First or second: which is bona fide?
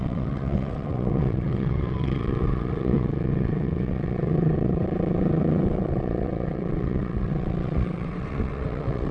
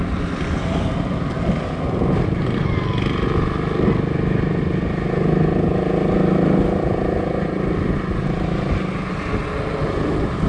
second